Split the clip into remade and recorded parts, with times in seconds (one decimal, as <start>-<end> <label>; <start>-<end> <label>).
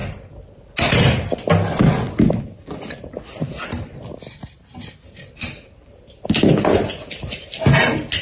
0.0-8.2 recorded